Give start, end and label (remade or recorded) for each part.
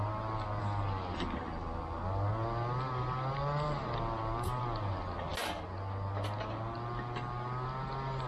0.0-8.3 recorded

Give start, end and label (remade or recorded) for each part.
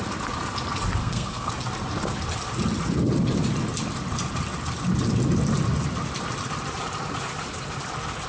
0.0-1.0 recorded; 1.0-1.5 remade; 1.5-8.3 recorded